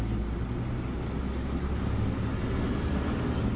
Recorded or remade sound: recorded